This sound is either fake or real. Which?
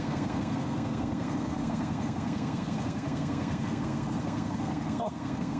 fake